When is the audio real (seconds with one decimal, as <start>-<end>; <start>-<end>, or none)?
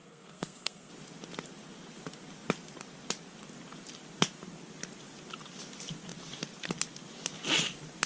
0.9-8.1